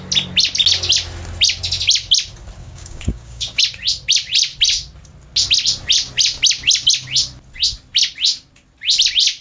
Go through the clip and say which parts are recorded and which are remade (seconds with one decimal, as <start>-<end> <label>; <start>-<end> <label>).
0.0-2.6 recorded; 2.6-3.6 remade; 3.6-9.4 recorded